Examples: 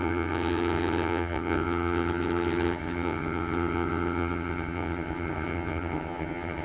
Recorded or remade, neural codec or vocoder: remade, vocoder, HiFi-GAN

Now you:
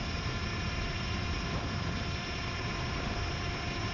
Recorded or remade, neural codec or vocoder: remade, vocoder, BigVGAN v2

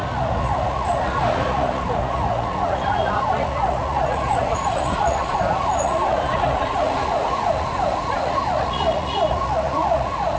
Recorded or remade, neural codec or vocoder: remade, vocoder, Vocos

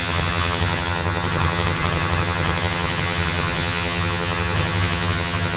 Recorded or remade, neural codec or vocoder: remade, vocoder, HiFi-GAN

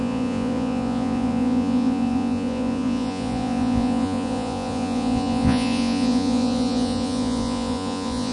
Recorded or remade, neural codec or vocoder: remade, vocoder, Vocos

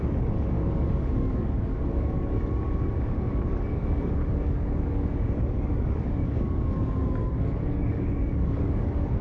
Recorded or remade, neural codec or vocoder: remade, codec, DAC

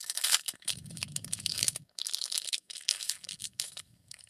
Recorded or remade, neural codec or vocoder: remade, codec, SNAC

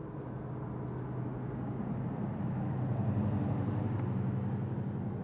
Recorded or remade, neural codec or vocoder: recorded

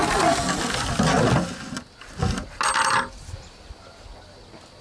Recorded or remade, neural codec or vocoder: recorded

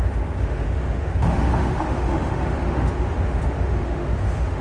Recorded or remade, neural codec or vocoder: remade, autoencoder, DAC-VAE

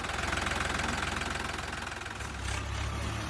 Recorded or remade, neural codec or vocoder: recorded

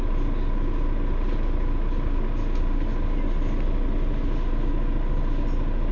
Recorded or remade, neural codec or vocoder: recorded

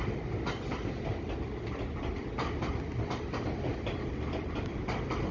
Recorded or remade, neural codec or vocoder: recorded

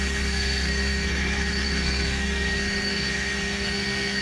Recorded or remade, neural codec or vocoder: remade, codec, SNAC